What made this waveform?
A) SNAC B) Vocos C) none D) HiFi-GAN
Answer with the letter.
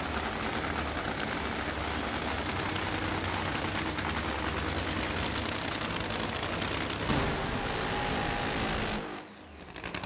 C